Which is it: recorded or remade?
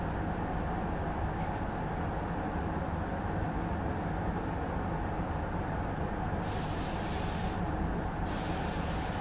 recorded